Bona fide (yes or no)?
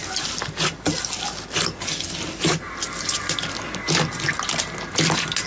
yes